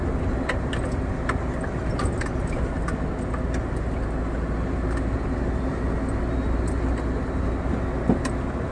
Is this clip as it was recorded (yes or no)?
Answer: yes